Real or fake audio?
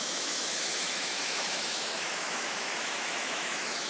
fake